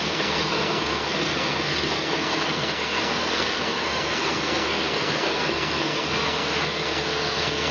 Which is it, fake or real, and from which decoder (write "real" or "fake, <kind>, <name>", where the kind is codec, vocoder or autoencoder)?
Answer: fake, codec, SNAC